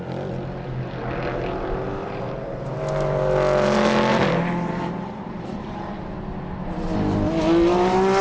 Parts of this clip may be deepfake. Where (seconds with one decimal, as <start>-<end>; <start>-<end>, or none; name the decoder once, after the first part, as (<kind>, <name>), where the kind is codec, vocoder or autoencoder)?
2.0-2.8 (vocoder, BigVGAN v2); 4.1-5.9